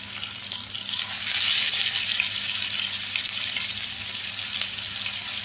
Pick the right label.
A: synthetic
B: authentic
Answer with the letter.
B